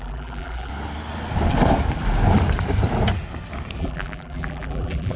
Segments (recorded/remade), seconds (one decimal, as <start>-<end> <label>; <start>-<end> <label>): 0.0-0.7 remade; 0.7-3.8 recorded; 3.8-5.2 remade